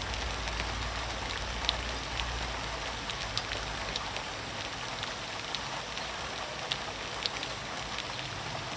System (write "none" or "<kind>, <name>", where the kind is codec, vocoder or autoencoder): none